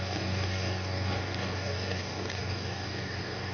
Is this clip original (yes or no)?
no